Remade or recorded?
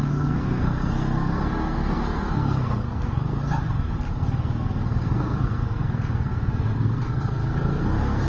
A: remade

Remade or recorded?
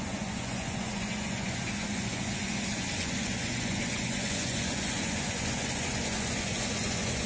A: remade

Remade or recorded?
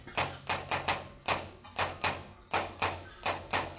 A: recorded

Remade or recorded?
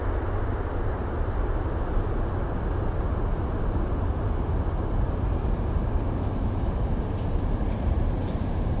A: recorded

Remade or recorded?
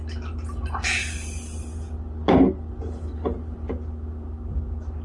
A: recorded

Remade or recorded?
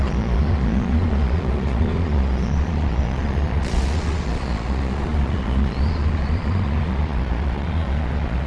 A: remade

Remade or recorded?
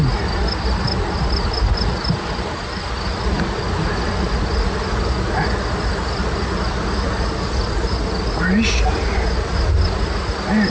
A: recorded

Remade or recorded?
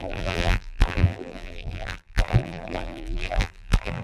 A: remade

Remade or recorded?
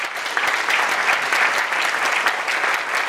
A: recorded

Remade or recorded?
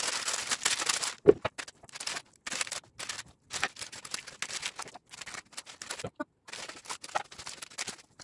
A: recorded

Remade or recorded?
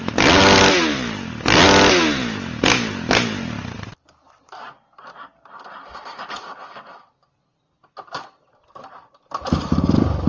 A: recorded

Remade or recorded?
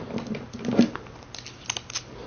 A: recorded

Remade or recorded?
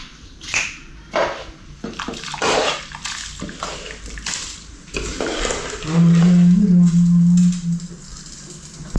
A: recorded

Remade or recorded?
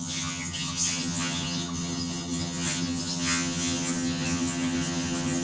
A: remade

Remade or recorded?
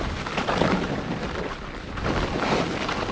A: recorded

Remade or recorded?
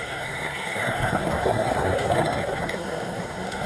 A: remade